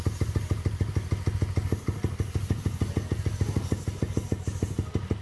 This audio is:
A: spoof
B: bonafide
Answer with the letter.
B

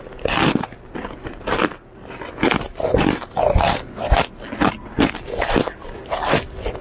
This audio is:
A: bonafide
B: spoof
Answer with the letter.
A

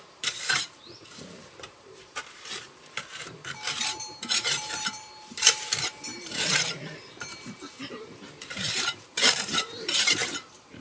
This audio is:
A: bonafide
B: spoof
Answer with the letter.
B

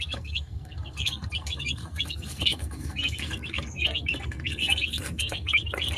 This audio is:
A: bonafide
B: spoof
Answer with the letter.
B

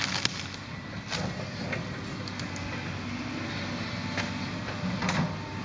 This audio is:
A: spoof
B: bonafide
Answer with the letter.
B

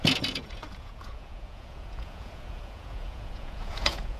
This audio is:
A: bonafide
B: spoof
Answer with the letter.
B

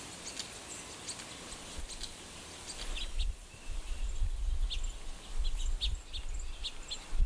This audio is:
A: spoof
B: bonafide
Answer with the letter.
B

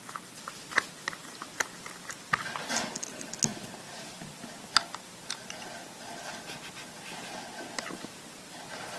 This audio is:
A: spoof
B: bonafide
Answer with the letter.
A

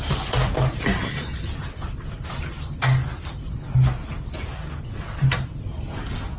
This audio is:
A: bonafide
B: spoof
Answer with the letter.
A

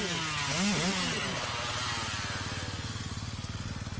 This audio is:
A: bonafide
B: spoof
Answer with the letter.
A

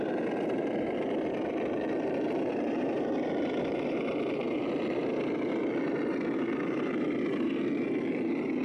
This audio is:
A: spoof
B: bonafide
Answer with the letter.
A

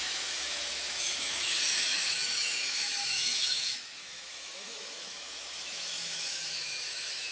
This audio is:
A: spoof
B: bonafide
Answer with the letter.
A